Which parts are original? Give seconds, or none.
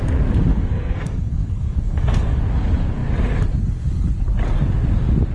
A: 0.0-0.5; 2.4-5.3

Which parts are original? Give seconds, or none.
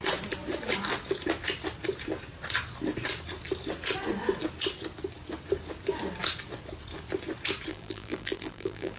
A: 0.0-7.7